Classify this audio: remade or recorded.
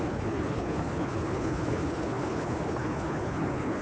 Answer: remade